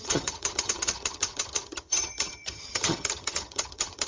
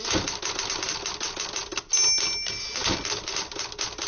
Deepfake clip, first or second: first